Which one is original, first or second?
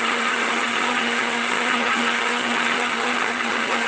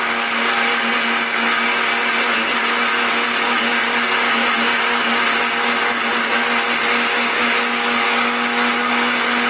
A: second